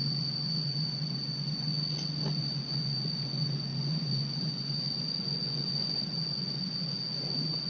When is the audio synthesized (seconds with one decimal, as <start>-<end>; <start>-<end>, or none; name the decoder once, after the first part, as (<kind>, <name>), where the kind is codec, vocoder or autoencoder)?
0.0-1.7 (vocoder, Vocos); 2.4-7.7